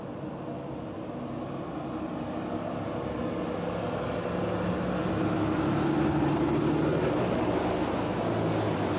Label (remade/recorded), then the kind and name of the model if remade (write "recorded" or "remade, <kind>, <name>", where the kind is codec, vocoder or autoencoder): recorded